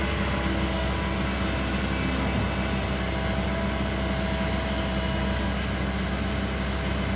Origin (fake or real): real